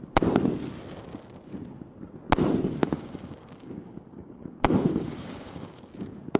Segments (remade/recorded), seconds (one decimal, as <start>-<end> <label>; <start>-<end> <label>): 0.0-2.8 recorded; 2.8-5.9 remade; 5.9-6.4 recorded